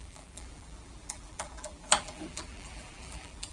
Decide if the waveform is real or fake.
fake